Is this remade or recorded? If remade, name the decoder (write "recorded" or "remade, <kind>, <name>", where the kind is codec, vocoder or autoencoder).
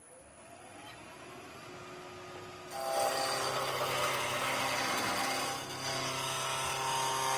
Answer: recorded